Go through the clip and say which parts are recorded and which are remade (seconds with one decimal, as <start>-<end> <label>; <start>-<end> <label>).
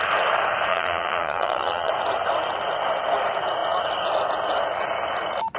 0.0-0.7 recorded; 0.7-1.9 remade; 1.9-5.6 recorded